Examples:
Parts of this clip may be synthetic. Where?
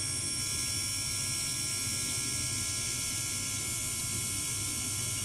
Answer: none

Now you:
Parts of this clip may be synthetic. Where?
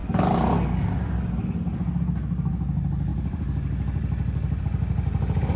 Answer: 3.1-4.6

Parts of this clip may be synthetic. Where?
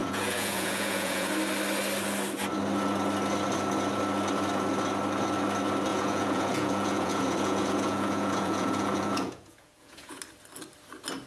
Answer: 0.0-1.3; 5.9-10.2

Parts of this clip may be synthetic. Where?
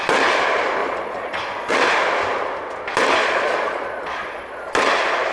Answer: 0.8-1.7; 3.2-4.7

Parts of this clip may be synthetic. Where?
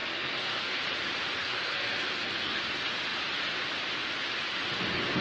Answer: 0.0-0.8; 1.4-2.6